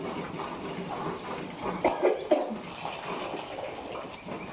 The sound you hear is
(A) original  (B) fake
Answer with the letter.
A